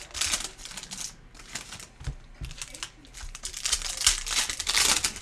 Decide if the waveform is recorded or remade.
recorded